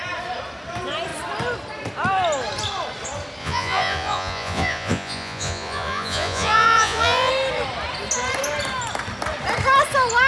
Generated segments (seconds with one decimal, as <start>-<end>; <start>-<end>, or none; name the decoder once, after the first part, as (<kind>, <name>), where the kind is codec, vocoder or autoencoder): 3.4-7.3 (vocoder, Vocos)